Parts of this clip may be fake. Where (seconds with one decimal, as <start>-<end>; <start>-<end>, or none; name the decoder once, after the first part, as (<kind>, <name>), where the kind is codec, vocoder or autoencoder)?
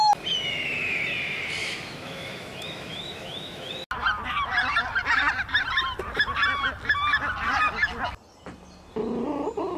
1.6-3.7 (autoencoder, DAC-VAE)